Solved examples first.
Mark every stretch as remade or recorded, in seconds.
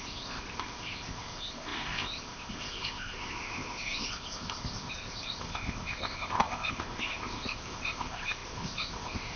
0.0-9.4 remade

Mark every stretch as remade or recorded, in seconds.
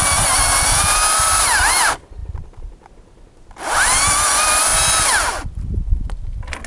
0.0-6.7 recorded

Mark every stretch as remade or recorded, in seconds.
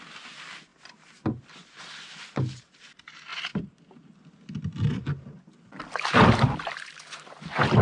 0.0-7.8 recorded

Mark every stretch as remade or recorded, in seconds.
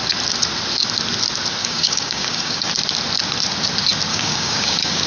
0.0-1.6 recorded; 1.6-2.7 remade; 2.7-4.1 recorded; 4.1-5.1 remade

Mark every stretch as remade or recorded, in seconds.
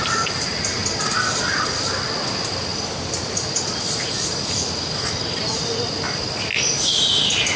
0.0-7.6 recorded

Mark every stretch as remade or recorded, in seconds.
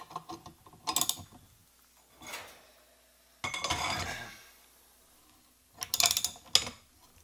0.0-7.2 recorded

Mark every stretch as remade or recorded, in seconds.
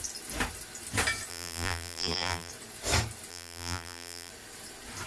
0.0-1.3 recorded; 1.3-2.5 remade; 2.5-3.3 recorded; 3.3-4.3 remade; 4.3-5.1 recorded